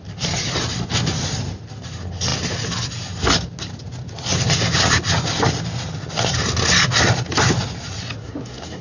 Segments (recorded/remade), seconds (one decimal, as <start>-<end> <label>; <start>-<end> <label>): 0.0-8.2 recorded; 8.2-8.8 remade